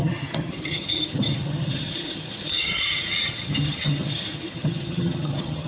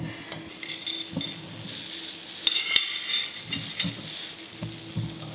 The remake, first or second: first